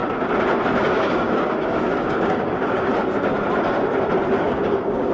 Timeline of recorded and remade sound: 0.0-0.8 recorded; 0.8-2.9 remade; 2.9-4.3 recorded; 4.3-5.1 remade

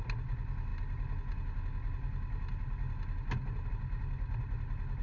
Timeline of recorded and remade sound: 0.0-5.0 recorded

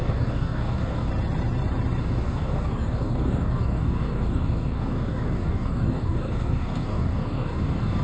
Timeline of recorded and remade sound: 0.0-1.1 remade; 1.1-2.0 recorded; 2.0-8.0 remade

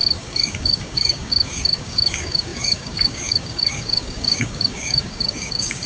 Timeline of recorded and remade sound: 0.0-5.9 remade

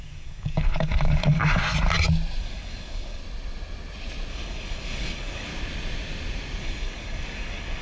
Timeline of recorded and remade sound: 0.0-1.6 remade; 1.6-2.4 recorded; 2.4-3.2 remade; 3.2-4.3 recorded; 4.3-5.5 remade; 5.5-6.6 recorded; 6.6-7.8 remade

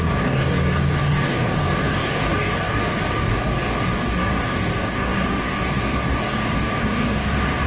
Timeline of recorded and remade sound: 0.0-7.7 remade

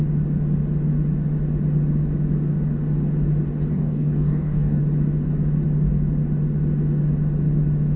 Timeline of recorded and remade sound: 0.0-3.7 recorded; 3.7-4.8 remade; 4.8-8.0 recorded